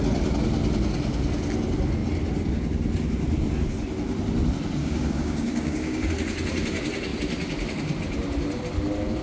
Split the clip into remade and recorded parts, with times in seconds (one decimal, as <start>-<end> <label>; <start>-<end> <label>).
0.0-4.8 recorded; 4.8-6.1 remade; 6.1-9.2 recorded